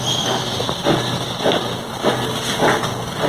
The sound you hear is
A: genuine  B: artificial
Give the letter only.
A